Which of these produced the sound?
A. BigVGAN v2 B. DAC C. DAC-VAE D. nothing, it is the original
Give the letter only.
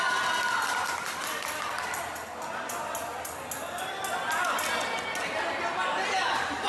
D